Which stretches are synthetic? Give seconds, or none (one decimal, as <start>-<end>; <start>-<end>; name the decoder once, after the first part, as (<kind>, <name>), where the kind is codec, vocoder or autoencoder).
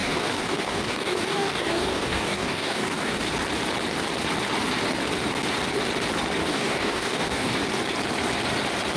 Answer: 0.0-3.3 (codec, DAC); 6.4-7.6